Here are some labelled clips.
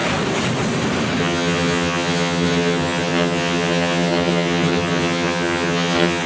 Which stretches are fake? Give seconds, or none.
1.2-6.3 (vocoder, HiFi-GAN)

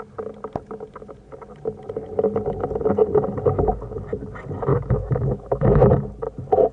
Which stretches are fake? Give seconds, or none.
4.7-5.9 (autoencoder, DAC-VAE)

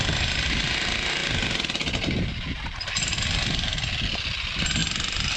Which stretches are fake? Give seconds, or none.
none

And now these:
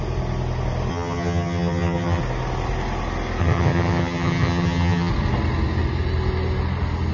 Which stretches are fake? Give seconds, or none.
0.9-2.2 (vocoder, HiFi-GAN); 3.4-5.1

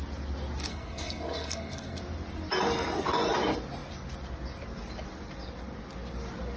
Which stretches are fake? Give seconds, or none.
0.7-2.0 (codec, SNAC)

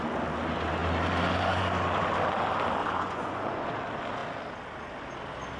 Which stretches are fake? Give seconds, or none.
2.8-3.7 (vocoder, Vocos)

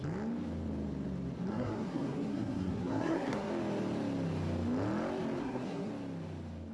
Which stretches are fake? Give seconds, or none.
1.5-3.5 (codec, SNAC); 5.4-5.9

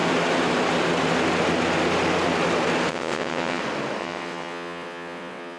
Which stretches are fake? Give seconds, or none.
2.9-3.6 (vocoder, WaveNeXt); 4.0-5.6